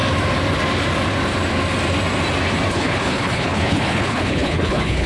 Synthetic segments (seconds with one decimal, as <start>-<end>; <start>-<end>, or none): 2.7-5.1